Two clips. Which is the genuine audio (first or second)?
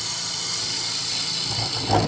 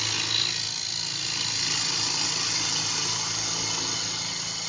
second